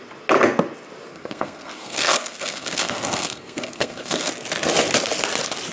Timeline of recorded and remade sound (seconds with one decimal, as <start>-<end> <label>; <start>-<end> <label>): 0.0-1.1 recorded; 1.1-4.3 remade; 4.3-5.7 recorded